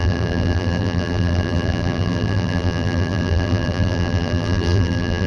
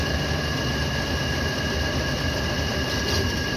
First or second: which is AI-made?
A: first